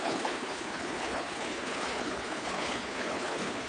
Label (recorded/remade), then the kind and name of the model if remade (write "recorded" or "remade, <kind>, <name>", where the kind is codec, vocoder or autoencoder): remade, codec, HILCodec